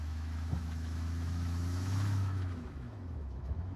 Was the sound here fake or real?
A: fake